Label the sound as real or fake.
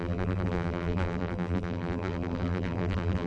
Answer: fake